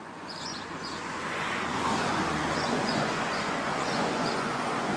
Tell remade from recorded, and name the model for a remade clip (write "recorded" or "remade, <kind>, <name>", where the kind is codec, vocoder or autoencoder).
remade, vocoder, Vocos